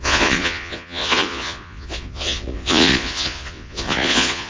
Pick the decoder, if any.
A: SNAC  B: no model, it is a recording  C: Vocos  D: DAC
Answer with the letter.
C